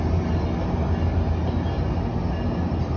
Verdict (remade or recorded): recorded